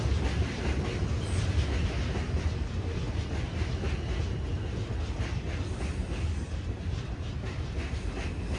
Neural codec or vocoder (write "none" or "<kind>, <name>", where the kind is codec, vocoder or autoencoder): none